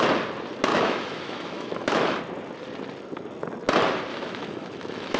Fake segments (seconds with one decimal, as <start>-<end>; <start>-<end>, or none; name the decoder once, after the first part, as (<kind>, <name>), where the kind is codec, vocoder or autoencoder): 0.7-2.2 (autoencoder, DAC-VAE); 4.1-5.2